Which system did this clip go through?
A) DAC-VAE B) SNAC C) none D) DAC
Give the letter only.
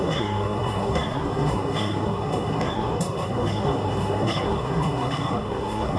B